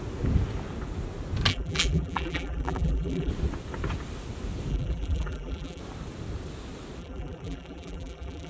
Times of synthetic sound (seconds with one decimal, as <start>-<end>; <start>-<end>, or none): 1.5-3.3; 4.7-5.8; 7.0-8.5